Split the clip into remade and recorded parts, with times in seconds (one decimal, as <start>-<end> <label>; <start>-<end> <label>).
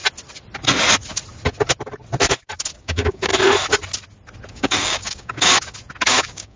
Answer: 0.0-2.8 recorded; 2.8-3.3 remade; 3.3-4.5 recorded; 4.5-5.5 remade; 5.5-6.1 recorded; 6.1-6.6 remade